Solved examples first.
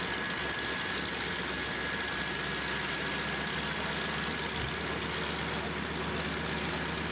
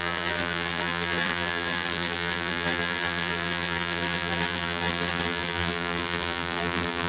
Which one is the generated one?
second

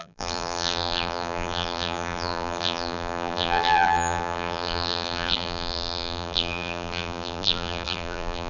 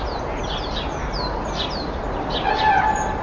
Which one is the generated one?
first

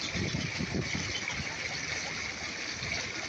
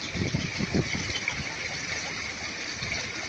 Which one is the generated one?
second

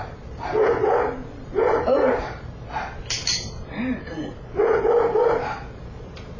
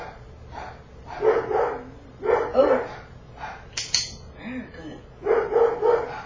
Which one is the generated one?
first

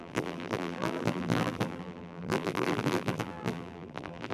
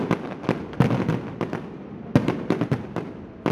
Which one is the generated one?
first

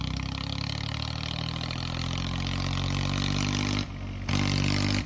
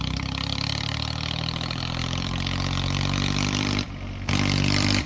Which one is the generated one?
second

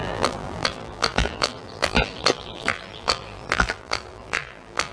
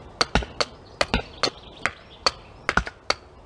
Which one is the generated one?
first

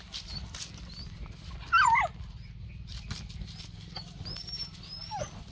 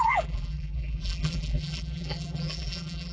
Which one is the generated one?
second